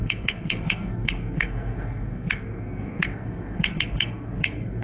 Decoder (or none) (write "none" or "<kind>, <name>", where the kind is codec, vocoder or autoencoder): codec, SNAC